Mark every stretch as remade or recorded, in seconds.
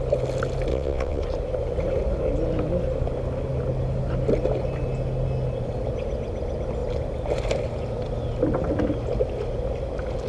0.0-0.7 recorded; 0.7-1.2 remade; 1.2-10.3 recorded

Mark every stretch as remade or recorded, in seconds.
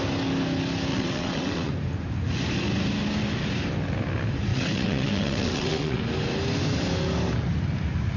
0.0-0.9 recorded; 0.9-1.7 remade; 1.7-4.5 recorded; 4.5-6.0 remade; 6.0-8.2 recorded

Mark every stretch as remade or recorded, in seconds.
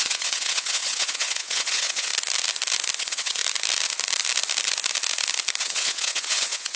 0.0-2.1 remade; 2.1-3.0 recorded; 3.0-3.4 remade; 3.4-5.6 recorded; 5.6-6.8 remade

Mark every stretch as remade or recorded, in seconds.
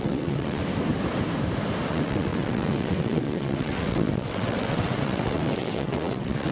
0.0-0.6 remade; 0.6-1.9 recorded; 1.9-6.5 remade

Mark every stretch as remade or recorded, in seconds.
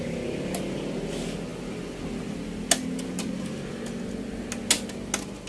0.0-5.5 recorded